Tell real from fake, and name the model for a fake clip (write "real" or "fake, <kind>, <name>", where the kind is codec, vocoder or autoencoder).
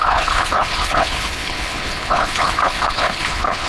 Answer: fake, codec, HILCodec